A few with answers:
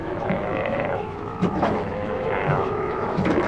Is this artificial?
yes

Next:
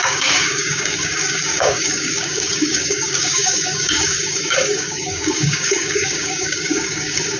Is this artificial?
yes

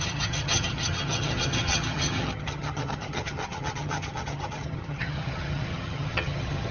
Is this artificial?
yes